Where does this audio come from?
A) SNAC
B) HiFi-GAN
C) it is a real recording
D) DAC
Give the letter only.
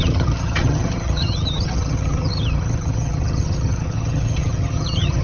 B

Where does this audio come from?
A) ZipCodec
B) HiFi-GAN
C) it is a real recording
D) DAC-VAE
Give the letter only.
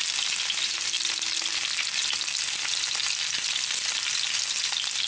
C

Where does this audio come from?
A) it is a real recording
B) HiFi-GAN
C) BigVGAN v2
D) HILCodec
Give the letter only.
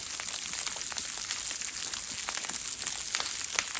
A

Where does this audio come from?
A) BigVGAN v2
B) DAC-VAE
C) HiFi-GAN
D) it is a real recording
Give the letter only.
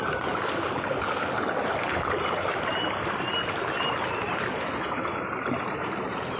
D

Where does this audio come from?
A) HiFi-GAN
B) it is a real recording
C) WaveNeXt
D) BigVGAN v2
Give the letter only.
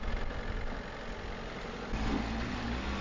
B